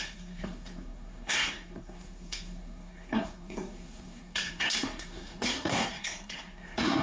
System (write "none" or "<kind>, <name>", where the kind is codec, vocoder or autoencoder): codec, SNAC